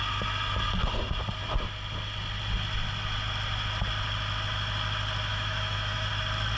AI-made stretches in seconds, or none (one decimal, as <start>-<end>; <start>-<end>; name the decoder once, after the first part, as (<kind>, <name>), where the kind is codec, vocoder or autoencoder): 5.3-6.1 (autoencoder, DAC-VAE)